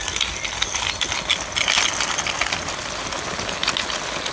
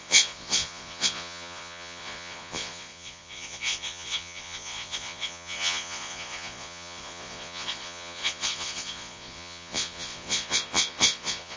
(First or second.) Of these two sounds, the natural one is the first